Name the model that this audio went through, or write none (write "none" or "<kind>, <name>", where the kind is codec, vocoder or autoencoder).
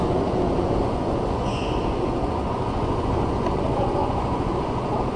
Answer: vocoder, Vocos